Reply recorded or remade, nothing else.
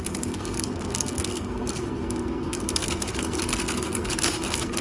remade